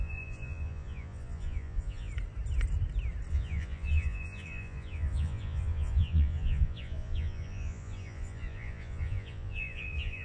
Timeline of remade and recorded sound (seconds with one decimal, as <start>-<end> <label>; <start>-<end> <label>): 0.0-2.1 remade; 2.1-3.3 recorded; 3.3-10.2 remade